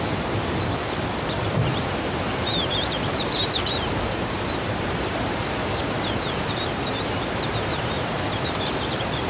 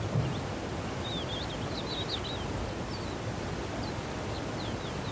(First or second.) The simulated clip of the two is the first